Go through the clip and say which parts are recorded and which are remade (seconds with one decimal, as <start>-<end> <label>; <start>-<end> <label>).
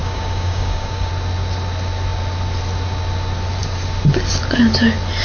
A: 0.0-1.1 remade; 1.1-5.2 recorded